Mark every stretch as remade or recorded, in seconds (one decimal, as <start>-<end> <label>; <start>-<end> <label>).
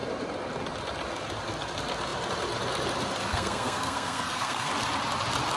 0.0-3.3 recorded; 3.3-4.7 remade; 4.7-5.6 recorded